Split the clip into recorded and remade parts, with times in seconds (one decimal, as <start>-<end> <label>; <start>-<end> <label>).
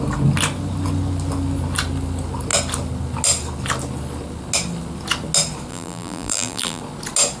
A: 0.0-5.7 recorded; 5.7-6.8 remade; 6.8-7.4 recorded